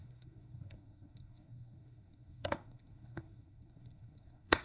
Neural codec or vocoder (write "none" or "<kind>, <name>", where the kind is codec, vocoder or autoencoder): codec, SNAC